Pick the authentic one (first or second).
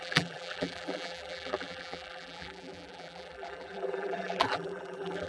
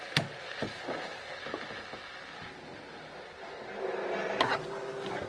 second